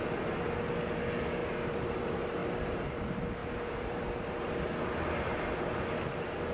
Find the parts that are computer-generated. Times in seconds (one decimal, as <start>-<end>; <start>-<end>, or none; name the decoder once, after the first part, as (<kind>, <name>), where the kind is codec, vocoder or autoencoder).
1.4-2.0 (vocoder, BigVGAN v2); 2.4-3.0; 3.4-4.5